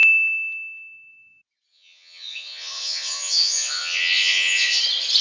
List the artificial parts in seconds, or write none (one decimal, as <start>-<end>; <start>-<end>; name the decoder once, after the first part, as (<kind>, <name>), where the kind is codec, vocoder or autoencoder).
1.7-4.8 (vocoder, Vocos)